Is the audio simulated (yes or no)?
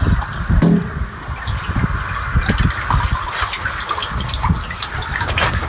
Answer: no